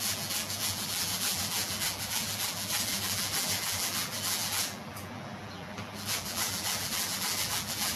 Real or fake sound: fake